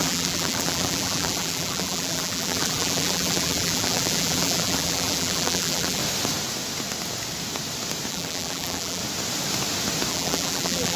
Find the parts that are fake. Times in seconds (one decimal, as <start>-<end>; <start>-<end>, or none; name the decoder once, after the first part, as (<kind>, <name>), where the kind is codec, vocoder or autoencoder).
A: 0.0-6.0 (vocoder, BigVGAN v2); 8.1-9.0; 10.1-11.0